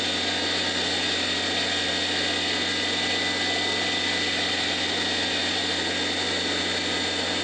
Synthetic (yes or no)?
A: no